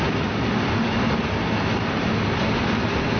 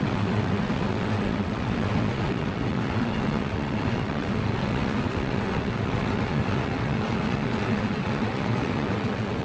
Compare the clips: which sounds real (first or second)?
first